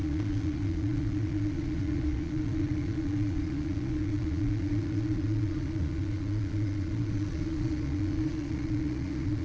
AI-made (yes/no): yes